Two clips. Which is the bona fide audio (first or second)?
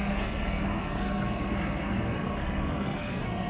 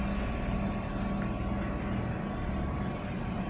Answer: second